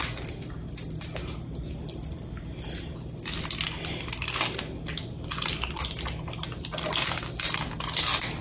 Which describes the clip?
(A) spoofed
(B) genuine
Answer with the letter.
B